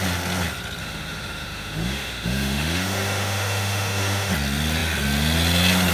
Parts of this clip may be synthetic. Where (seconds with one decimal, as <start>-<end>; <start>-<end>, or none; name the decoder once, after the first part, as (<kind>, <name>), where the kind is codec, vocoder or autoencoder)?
0.8-4.3 (autoencoder, DAC-VAE)